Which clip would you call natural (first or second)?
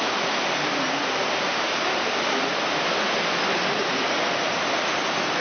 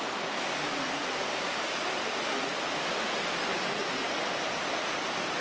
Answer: first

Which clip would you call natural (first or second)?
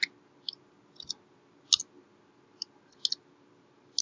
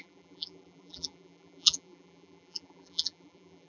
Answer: first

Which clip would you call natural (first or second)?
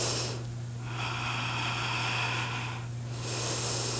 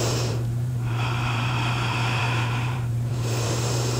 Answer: first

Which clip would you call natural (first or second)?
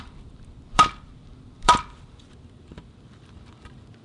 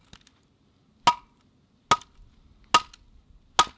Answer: second